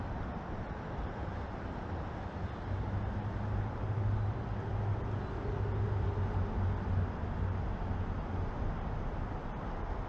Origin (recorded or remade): recorded